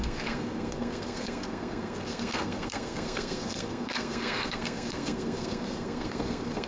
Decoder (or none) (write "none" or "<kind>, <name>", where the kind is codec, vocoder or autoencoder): codec, SNAC